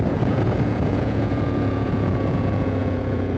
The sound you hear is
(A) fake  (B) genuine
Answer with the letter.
A